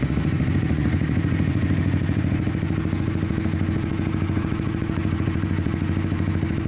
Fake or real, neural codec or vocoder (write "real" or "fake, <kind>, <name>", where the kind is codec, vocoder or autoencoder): fake, vocoder, Vocos